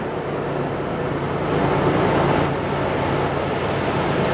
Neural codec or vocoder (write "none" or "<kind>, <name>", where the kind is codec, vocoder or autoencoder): none